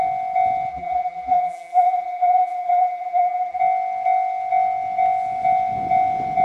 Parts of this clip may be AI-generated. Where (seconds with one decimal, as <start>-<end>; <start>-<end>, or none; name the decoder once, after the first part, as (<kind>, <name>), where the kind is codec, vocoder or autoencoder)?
0.7-3.6 (vocoder, BigVGAN v2)